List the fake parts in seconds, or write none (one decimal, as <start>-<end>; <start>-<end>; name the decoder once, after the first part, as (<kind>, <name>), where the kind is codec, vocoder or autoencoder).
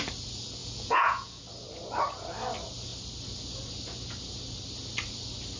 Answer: 0.6-1.4 (vocoder, Vocos)